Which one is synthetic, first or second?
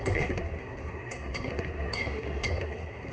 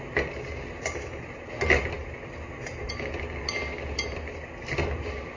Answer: first